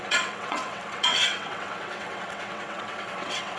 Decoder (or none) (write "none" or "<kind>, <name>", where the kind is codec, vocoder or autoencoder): vocoder, WaveNeXt